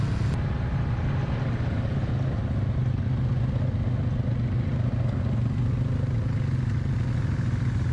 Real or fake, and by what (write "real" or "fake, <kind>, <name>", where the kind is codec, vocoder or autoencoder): real